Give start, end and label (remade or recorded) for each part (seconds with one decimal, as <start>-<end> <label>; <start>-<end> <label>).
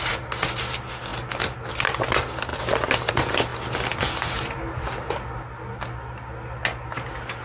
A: 0.0-1.1 recorded; 1.1-1.7 remade; 1.7-2.5 recorded; 2.5-3.1 remade; 3.1-3.5 recorded; 3.5-4.1 remade; 4.1-7.4 recorded